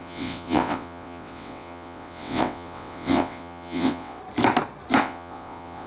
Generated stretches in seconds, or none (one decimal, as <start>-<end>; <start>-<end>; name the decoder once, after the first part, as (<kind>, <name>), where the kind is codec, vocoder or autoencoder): 0.0-4.2 (vocoder, WaveNeXt); 5.0-5.9